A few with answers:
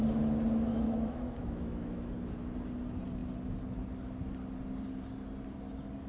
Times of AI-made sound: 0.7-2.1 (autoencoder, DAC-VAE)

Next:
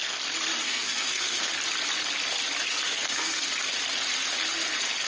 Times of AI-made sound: 0.6-1.5 (codec, SNAC); 2.7-3.5

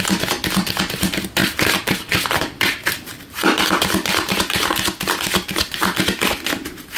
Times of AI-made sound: 1.4-2.6 (vocoder, BigVGAN v2); 3.1-4.6

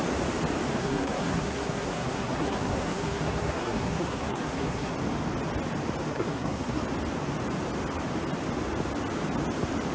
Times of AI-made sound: 0.8-4.9 (codec, SNAC); 6.1-6.8